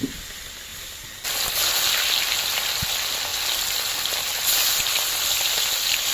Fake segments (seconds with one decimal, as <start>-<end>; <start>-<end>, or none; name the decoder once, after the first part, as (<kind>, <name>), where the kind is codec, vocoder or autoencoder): none